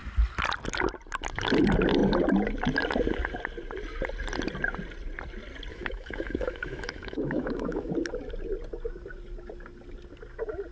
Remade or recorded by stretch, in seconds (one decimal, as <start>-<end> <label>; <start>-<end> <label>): 0.0-5.7 recorded; 5.7-7.9 remade; 7.9-10.7 recorded